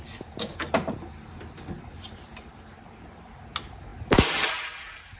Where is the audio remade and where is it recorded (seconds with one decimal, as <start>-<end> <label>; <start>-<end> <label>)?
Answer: 0.0-5.2 recorded